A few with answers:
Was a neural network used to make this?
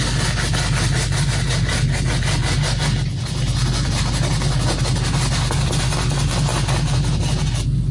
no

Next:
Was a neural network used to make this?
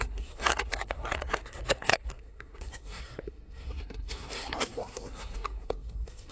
yes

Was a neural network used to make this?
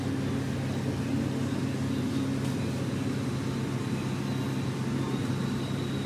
no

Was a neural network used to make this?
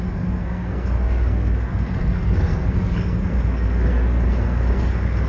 yes